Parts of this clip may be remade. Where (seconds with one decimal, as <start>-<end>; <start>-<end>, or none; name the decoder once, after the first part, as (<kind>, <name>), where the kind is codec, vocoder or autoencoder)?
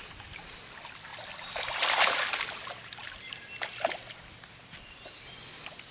none